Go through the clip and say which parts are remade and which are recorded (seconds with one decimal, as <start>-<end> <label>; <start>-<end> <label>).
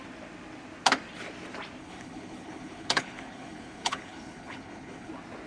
0.0-1.8 recorded; 1.8-5.1 remade; 5.1-5.5 recorded